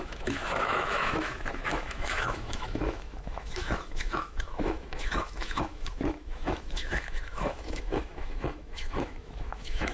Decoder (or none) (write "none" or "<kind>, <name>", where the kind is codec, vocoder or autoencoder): autoencoder, DAC-VAE